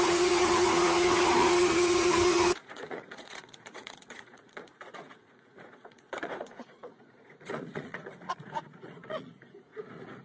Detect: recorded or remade remade